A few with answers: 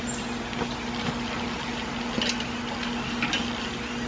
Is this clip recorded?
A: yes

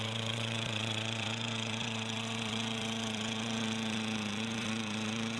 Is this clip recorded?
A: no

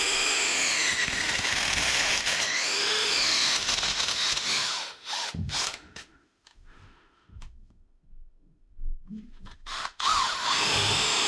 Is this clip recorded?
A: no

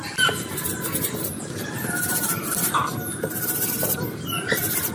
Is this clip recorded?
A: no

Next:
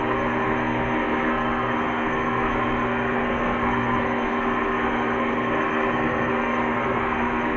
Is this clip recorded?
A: no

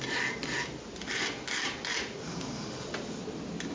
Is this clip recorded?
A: yes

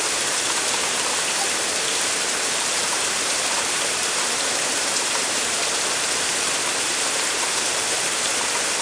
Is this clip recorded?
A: no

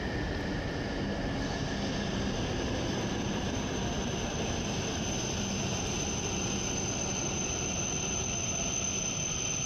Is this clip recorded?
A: yes